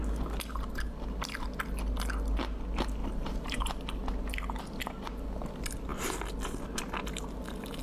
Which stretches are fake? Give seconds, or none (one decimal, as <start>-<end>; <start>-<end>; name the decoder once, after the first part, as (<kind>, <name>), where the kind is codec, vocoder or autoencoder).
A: 3.0-3.6 (vocoder, BigVGAN v2)

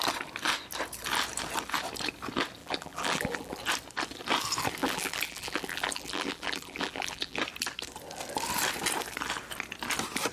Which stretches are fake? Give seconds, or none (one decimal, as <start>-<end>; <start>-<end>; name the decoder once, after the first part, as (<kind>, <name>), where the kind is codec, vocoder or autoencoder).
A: 2.6-3.6 (vocoder, BigVGAN v2); 4.8-7.4